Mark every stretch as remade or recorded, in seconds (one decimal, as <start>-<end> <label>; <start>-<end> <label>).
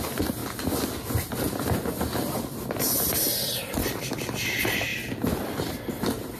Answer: 0.0-6.4 recorded